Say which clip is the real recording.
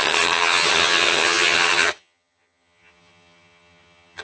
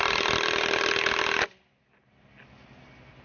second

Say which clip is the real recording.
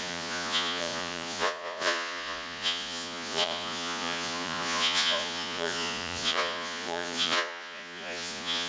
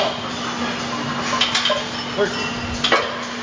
second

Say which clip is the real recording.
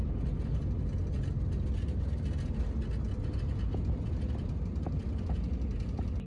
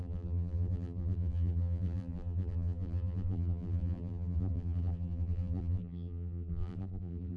first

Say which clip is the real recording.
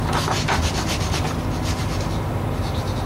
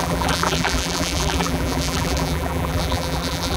first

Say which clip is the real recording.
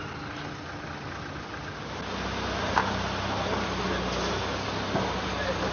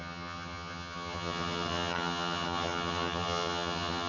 first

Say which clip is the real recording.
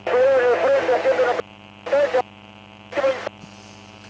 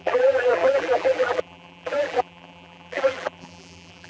first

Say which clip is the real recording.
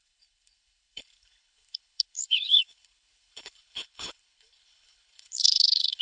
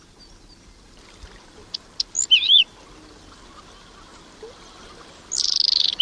second